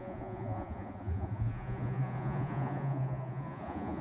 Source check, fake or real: fake